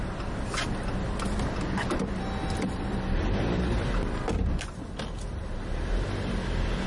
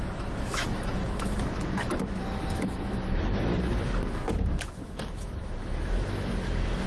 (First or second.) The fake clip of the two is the second